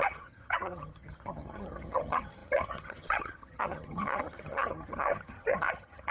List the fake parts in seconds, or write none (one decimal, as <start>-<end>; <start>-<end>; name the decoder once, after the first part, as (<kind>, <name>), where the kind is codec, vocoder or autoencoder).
0.0-6.1 (vocoder, HiFi-GAN)